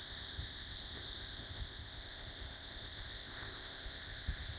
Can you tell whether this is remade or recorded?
remade